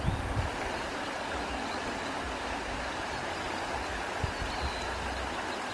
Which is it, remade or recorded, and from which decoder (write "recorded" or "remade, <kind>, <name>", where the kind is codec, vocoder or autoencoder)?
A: recorded